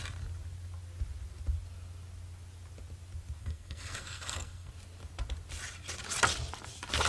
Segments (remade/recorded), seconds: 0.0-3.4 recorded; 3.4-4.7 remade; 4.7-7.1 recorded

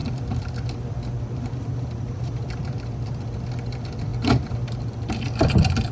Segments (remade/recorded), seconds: 0.0-5.9 remade